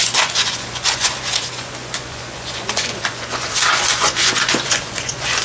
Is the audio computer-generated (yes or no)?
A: yes